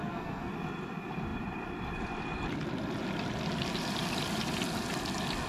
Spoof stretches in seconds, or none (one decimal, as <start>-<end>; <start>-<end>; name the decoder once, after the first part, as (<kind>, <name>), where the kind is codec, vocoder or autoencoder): 0.0-0.5 (codec, SNAC)